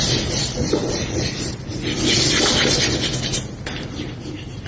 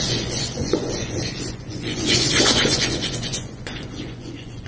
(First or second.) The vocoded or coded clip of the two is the second